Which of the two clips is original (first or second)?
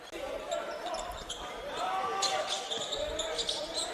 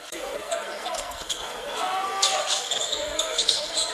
first